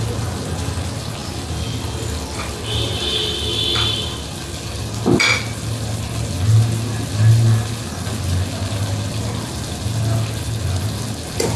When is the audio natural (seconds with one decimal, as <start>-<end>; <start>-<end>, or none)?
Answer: 0.0-11.6